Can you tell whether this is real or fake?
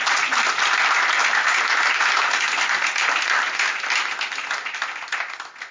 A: real